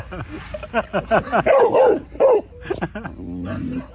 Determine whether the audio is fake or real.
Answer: real